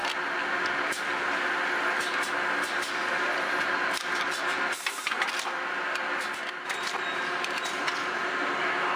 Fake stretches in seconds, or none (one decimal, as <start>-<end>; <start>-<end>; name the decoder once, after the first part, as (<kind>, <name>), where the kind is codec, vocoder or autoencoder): none